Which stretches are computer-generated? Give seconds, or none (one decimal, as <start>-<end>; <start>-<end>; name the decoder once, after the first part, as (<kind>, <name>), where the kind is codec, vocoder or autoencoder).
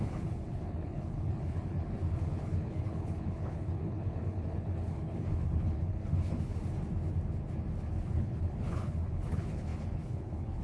0.0-6.6 (codec, HILCodec); 8.0-10.6